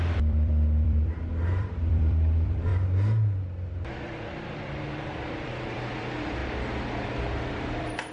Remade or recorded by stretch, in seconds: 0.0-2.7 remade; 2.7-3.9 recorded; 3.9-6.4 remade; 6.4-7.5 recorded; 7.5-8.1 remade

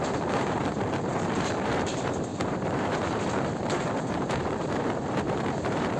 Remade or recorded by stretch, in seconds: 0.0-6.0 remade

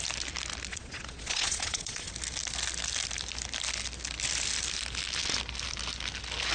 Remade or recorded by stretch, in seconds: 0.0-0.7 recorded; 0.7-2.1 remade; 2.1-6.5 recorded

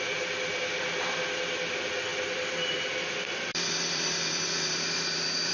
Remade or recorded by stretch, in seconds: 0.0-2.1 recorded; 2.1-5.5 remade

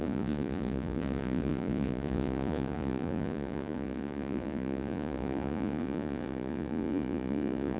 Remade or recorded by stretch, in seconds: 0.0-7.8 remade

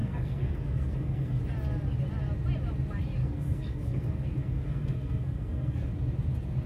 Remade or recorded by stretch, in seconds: 0.0-1.4 remade; 1.4-3.2 recorded; 3.2-5.9 remade; 5.9-6.7 recorded